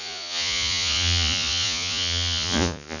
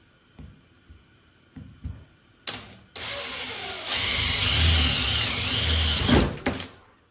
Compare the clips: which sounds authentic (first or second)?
second